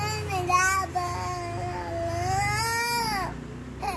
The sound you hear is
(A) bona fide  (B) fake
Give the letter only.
A